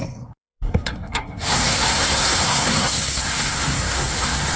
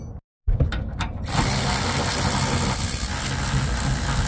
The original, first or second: second